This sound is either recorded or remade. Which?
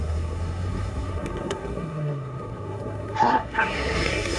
remade